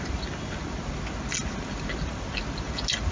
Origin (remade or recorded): recorded